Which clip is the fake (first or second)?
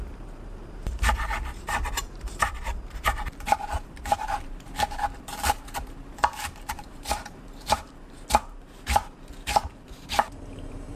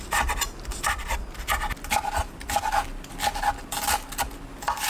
first